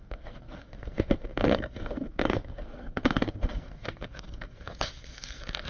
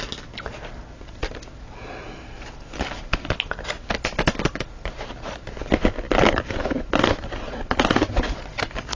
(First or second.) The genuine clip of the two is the second